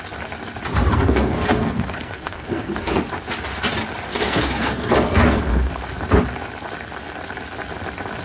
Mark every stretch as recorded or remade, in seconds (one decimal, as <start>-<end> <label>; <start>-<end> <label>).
0.0-0.9 recorded; 0.9-3.0 remade; 3.0-4.1 recorded; 4.1-5.7 remade; 5.7-8.2 recorded